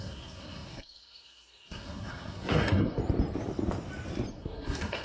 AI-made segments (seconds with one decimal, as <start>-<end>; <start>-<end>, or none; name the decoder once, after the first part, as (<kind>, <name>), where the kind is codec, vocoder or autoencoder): 0.0-3.0 (codec, SNAC); 4.3-5.0